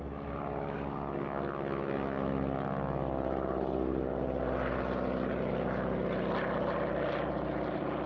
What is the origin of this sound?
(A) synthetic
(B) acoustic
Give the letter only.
B